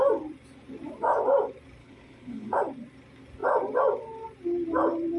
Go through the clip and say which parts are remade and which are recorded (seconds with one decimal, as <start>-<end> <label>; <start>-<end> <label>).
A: 0.0-1.8 recorded; 1.8-2.6 remade; 2.6-5.2 recorded